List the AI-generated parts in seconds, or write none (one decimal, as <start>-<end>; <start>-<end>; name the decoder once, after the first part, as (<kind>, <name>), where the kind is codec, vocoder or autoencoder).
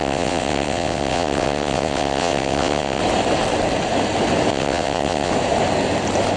0.0-3.0 (vocoder, WaveNeXt); 4.5-5.3